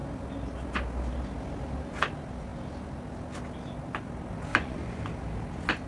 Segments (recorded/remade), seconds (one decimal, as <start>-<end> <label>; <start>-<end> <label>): 0.0-4.5 recorded; 4.5-5.0 remade; 5.0-5.9 recorded